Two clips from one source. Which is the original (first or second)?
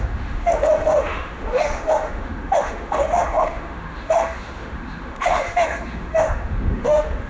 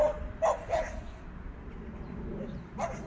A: second